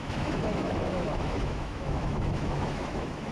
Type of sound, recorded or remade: remade